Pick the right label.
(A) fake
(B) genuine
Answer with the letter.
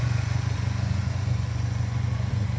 A